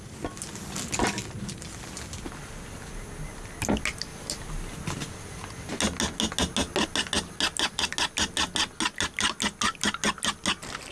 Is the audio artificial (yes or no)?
no